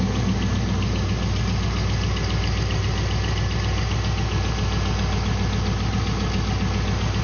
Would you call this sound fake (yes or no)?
no